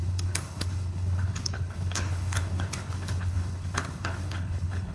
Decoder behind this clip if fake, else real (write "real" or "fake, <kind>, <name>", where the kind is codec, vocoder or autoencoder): fake, codec, HILCodec